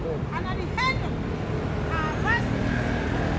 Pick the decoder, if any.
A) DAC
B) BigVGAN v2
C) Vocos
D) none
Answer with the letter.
D